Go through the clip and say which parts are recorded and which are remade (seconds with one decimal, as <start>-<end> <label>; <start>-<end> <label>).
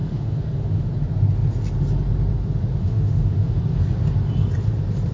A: 0.0-0.9 remade; 0.9-2.8 recorded; 2.8-3.6 remade; 3.6-5.1 recorded